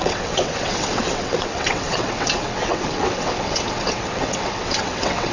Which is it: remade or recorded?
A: remade